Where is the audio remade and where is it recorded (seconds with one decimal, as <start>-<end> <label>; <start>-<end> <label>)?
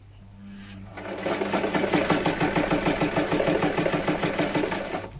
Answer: 0.0-5.2 recorded